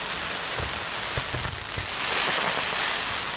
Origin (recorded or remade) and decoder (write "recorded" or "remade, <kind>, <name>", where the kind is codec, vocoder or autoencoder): recorded